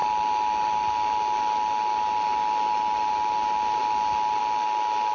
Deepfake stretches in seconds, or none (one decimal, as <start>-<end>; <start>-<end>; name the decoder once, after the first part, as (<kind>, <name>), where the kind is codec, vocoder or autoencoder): none